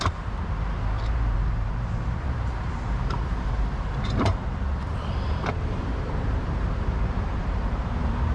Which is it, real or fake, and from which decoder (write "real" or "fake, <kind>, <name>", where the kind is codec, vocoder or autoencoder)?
fake, vocoder, BigVGAN v2